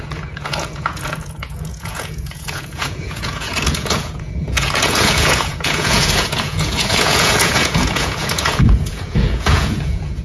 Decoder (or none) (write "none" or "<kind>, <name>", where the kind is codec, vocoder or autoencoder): vocoder, Vocos